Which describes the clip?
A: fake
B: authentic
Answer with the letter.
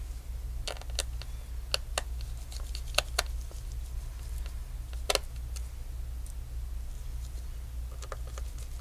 B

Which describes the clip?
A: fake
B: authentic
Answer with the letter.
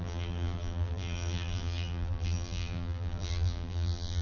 A